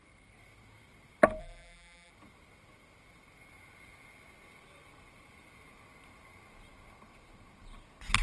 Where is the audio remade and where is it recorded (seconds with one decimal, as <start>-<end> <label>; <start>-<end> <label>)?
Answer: 0.0-1.4 recorded; 1.4-2.1 remade; 2.1-8.2 recorded